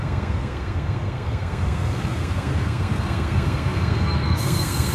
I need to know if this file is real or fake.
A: fake